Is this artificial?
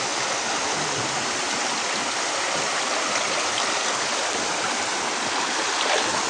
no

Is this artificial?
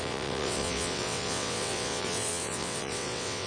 yes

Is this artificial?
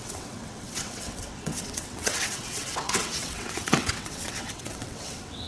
yes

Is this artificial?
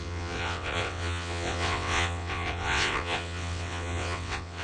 yes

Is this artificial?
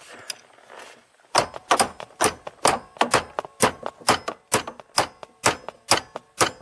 no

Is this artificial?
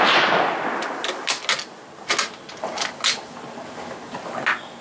no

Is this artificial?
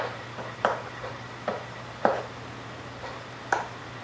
no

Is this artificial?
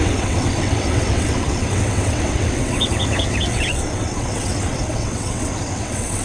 yes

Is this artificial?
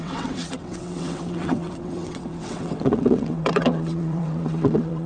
yes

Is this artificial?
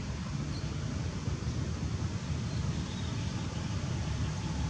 no